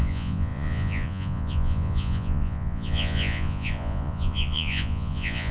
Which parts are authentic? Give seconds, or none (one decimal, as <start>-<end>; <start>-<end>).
none